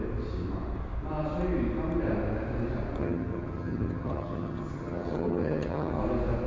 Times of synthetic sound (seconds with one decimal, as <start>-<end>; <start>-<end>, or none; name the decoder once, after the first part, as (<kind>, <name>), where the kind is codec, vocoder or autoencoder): 3.0-6.0 (vocoder, HiFi-GAN)